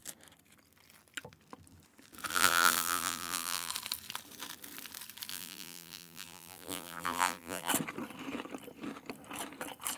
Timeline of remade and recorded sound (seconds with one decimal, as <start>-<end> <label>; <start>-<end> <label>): 0.0-2.3 recorded; 2.3-3.7 remade; 3.7-5.3 recorded; 5.3-7.7 remade; 7.7-10.0 recorded